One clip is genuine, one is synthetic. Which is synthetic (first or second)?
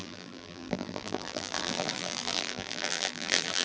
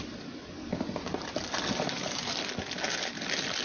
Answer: first